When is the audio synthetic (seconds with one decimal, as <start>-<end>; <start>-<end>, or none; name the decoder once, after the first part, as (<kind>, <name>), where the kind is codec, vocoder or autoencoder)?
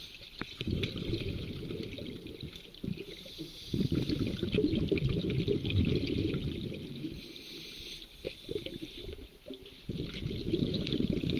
none